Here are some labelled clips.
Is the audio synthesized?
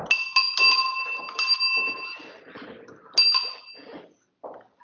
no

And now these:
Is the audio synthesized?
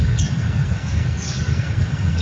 yes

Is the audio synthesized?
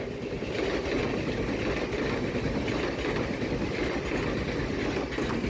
no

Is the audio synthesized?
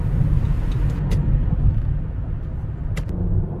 no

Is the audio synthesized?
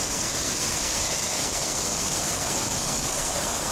yes